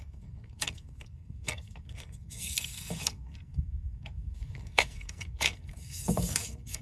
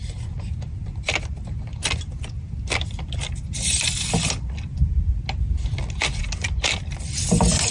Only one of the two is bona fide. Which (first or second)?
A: second